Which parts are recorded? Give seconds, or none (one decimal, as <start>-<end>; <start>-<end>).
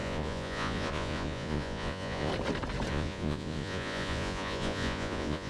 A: 2.3-2.9